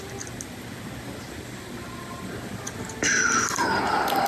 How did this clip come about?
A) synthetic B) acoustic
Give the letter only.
B